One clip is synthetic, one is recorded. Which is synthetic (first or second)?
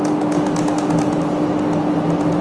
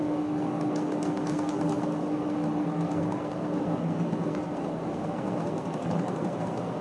second